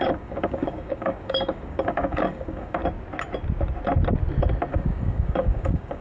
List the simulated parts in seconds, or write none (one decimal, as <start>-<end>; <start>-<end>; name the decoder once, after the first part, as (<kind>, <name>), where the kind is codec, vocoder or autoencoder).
0.0-2.8 (codec, DAC); 4.7-6.0